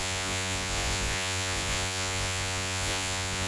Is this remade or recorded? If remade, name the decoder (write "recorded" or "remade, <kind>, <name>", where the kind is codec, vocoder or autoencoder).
remade, vocoder, Vocos